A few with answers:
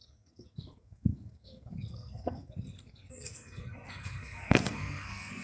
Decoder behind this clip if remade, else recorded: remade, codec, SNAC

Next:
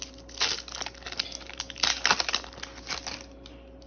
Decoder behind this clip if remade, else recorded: recorded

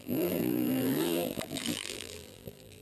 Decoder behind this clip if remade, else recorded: remade, vocoder, BigVGAN v2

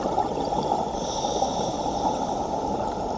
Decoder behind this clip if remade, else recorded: recorded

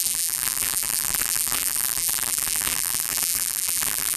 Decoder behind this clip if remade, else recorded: remade, vocoder, BigVGAN v2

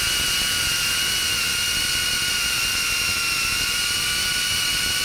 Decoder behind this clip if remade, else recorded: recorded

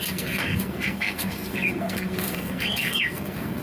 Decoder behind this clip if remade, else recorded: remade, codec, SNAC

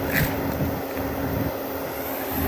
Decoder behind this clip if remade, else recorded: recorded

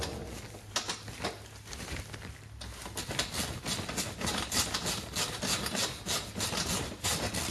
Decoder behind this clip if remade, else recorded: recorded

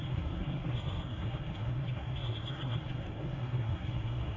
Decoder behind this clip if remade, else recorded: remade, codec, SNAC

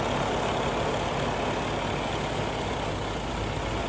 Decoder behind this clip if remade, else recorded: recorded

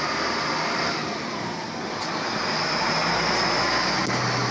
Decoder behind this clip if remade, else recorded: recorded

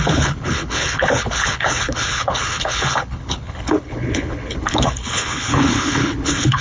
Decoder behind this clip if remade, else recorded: remade, codec, HILCodec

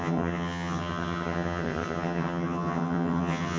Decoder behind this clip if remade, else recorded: remade, vocoder, HiFi-GAN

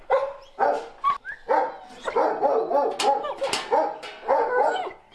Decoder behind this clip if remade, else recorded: recorded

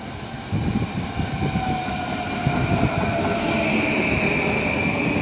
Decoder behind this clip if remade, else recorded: recorded